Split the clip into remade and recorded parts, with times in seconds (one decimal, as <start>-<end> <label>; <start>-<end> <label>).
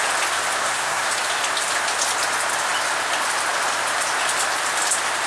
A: 0.0-0.6 recorded; 0.6-1.1 remade; 1.1-5.3 recorded